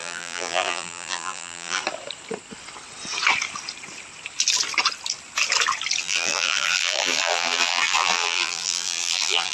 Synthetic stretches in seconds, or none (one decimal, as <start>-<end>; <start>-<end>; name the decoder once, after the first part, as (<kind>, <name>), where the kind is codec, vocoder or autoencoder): 0.0-1.8 (vocoder, BigVGAN v2); 6.0-9.5